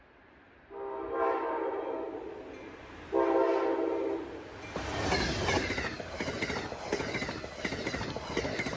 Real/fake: real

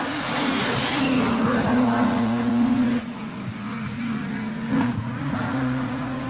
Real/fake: fake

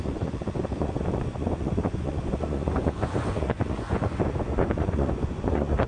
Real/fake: fake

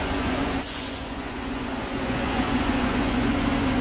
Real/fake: fake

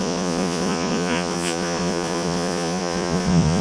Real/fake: fake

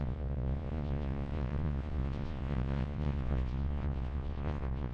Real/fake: fake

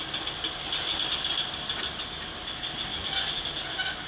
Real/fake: real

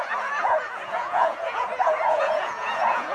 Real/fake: fake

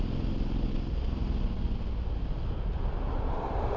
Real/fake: real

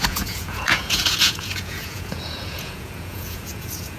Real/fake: fake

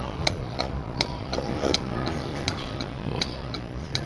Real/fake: fake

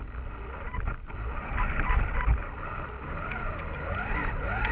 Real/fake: real